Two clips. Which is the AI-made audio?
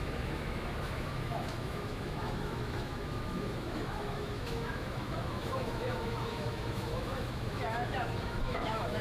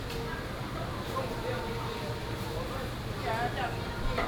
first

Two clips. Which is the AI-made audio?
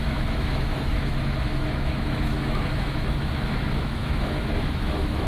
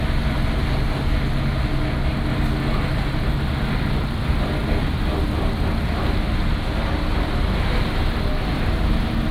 first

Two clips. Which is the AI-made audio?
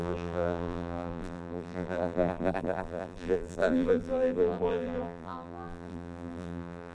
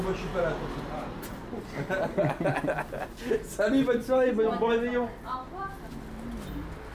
first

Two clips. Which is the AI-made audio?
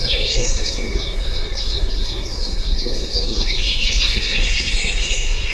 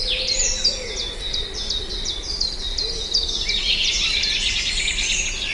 first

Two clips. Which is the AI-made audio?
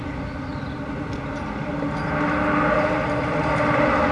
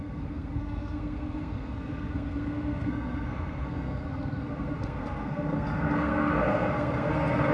second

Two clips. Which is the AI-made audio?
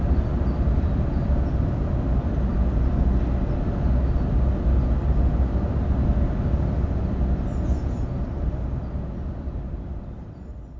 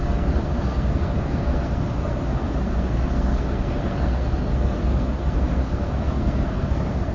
second